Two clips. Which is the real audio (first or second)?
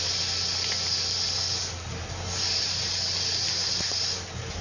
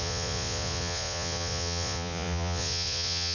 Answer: first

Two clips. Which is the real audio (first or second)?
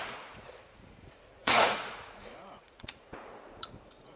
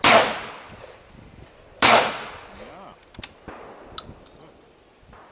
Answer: second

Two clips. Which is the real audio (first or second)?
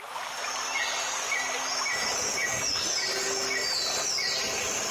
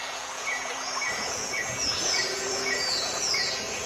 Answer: first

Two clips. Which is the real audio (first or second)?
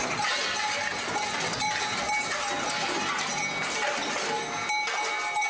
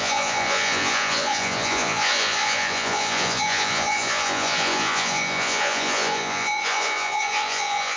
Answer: first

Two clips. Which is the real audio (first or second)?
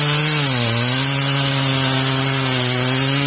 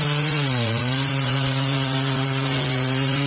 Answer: first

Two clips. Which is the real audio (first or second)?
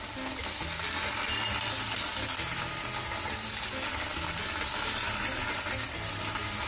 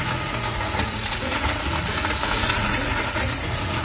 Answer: first